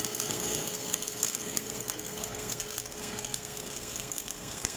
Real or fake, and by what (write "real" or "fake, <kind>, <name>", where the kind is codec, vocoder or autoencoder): fake, codec, SNAC